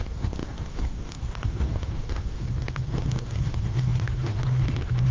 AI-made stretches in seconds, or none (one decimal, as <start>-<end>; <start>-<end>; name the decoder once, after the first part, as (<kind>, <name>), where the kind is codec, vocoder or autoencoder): 0.0-5.1 (codec, SNAC)